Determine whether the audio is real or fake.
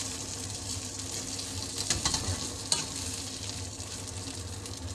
real